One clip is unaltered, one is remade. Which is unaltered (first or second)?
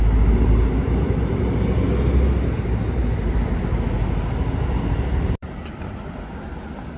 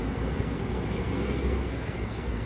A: first